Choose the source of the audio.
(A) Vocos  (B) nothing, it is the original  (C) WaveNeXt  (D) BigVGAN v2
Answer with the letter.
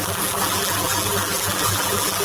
D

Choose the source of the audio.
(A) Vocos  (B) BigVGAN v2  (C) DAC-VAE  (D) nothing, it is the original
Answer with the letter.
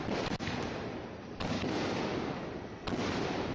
D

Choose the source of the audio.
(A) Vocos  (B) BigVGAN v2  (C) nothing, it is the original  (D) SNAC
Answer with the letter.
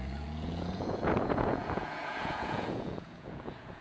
A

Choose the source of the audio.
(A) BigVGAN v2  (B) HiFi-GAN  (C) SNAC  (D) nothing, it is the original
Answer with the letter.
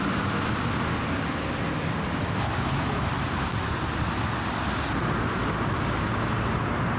D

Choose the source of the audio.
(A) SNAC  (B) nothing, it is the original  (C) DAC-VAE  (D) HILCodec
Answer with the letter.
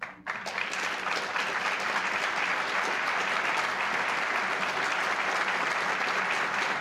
B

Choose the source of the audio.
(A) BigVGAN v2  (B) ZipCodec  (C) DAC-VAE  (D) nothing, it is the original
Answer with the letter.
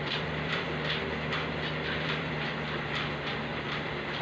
A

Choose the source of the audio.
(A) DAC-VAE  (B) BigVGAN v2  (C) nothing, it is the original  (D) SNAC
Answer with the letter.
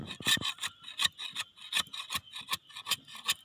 C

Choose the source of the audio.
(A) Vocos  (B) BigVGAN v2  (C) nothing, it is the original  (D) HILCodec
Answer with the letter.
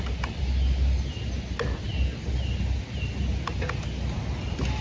C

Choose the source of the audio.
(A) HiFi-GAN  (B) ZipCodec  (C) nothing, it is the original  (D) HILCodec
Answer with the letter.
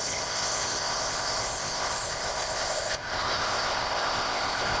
B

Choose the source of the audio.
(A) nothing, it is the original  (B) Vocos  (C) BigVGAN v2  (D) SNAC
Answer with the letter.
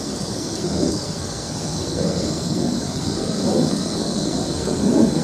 D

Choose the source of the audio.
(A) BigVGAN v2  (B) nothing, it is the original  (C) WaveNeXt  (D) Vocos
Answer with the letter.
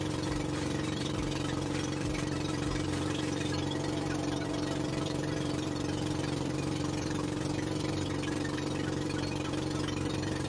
A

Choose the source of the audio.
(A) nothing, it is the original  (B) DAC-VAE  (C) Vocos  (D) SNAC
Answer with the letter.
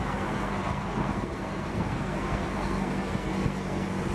D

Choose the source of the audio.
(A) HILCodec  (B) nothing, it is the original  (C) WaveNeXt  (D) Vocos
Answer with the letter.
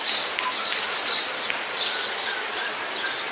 B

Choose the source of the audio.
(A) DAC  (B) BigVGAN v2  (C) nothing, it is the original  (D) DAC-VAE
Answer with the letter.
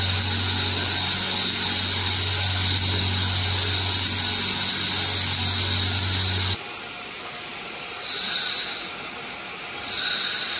C